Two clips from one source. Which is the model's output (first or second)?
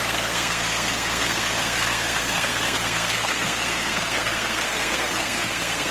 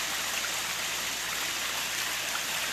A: first